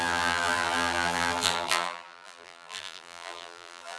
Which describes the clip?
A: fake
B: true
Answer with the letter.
A